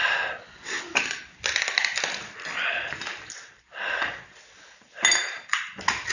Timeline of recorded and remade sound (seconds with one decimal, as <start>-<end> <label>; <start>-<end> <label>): 0.0-6.1 recorded